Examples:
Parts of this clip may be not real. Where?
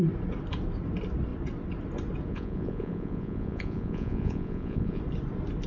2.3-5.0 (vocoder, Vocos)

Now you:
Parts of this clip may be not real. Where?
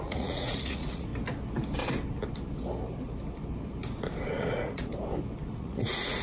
0.0-1.1 (vocoder, Vocos); 4.4-4.9; 5.5-6.2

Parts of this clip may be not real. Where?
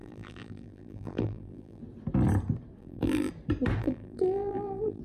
0.0-1.8 (vocoder, BigVGAN v2); 2.8-3.3; 3.8-5.0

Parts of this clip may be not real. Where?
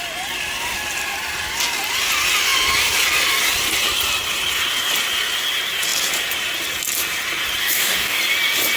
7.6-8.2 (codec, DAC)